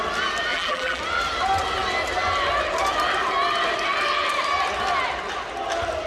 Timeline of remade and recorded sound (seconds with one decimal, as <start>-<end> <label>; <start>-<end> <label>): 0.0-0.5 recorded; 0.5-1.0 remade; 1.0-6.1 recorded